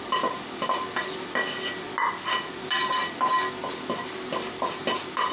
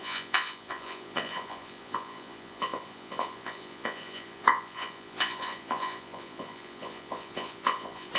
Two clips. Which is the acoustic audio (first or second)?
first